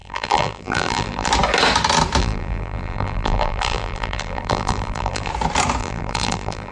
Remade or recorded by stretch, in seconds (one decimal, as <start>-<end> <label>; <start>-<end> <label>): 0.0-1.3 remade; 1.3-2.2 recorded; 2.2-5.3 remade; 5.3-5.8 recorded; 5.8-6.7 remade